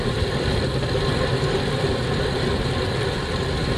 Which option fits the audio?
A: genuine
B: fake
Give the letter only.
B